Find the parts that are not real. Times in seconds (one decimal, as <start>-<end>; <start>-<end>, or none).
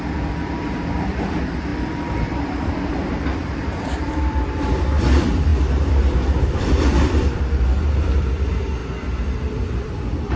0.0-10.4